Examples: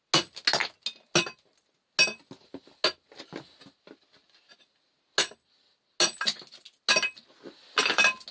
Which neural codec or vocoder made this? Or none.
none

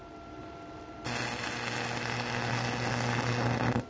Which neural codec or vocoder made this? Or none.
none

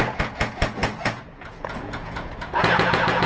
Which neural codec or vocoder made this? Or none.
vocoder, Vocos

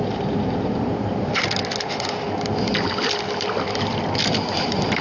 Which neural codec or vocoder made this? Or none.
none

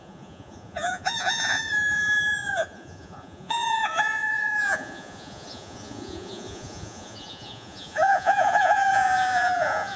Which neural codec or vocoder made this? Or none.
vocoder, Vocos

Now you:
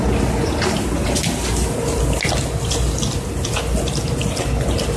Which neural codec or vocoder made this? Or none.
none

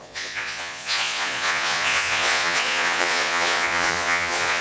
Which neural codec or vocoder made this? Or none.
vocoder, Vocos